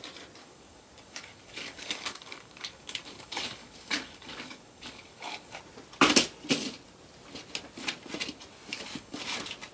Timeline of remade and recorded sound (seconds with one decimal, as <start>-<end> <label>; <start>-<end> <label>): 0.0-0.4 recorded; 0.4-5.6 remade; 5.6-8.7 recorded; 8.7-9.2 remade; 9.2-9.7 recorded